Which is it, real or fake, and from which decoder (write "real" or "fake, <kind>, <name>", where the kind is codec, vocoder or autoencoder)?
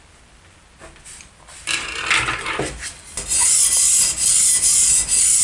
real